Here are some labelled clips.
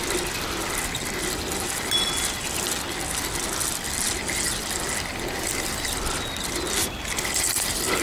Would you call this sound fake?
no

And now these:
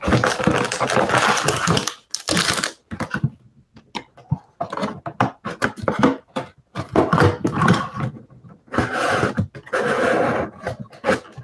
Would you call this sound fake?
no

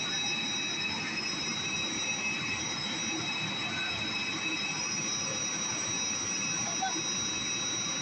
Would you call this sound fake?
no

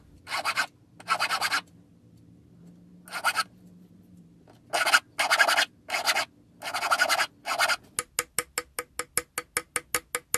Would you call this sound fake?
no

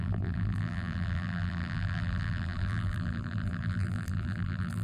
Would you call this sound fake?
yes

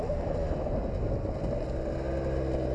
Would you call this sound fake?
no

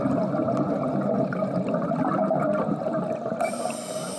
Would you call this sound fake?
no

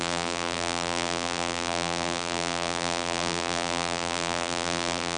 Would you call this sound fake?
yes